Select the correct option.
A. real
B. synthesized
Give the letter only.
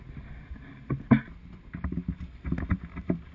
A